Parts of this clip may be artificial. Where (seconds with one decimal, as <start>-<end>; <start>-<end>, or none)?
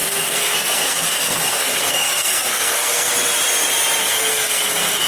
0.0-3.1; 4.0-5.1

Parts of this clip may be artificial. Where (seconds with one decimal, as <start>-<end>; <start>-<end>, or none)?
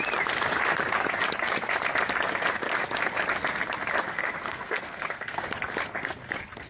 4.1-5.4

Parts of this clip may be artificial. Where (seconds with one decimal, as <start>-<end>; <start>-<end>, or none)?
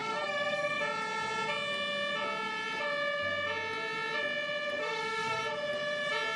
0.0-0.8; 4.8-5.4